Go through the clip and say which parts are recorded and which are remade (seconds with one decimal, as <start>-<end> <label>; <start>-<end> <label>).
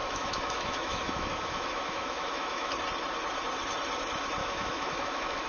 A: 0.0-2.7 remade; 2.7-4.4 recorded; 4.4-5.5 remade